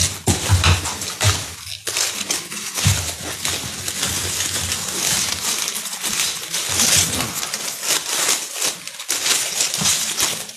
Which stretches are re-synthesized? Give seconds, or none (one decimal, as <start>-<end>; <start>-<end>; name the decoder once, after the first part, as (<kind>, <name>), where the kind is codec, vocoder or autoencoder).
none